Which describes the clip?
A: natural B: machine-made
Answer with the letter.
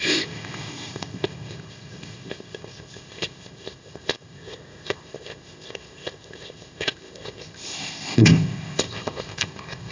B